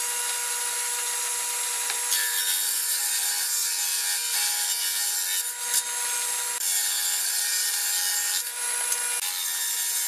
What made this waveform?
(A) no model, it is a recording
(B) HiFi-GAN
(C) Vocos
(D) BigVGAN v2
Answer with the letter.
A